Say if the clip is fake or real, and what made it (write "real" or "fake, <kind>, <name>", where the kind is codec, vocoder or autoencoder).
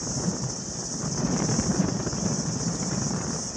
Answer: fake, vocoder, BigVGAN v2